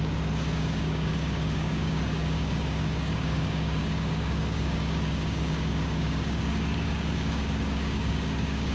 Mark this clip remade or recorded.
remade